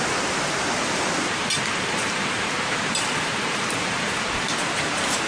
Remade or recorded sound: remade